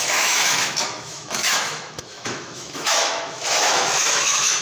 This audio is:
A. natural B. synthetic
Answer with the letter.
B